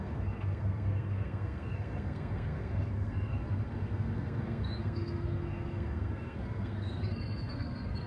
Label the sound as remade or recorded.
remade